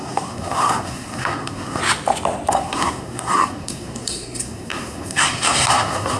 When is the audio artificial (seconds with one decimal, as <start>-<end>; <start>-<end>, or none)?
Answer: 0.0-1.8; 2.5-6.2